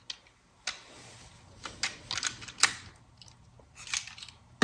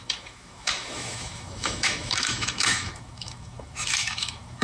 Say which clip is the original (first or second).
first